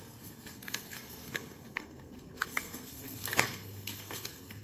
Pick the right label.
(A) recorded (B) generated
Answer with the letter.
B